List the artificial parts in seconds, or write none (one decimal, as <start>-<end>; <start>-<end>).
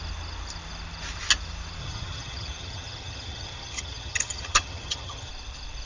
1.8-5.3